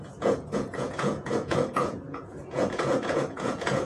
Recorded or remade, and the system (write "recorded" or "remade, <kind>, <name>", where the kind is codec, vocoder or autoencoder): remade, vocoder, Vocos